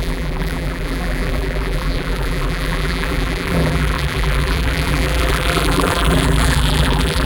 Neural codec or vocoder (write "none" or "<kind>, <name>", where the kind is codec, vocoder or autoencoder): vocoder, BigVGAN v2